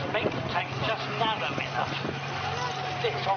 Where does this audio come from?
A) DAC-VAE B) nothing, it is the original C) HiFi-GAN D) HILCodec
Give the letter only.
B